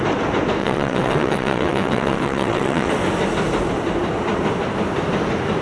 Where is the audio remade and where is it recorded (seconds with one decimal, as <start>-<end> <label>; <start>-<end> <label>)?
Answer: 0.0-0.6 recorded; 0.6-2.9 remade; 2.9-5.6 recorded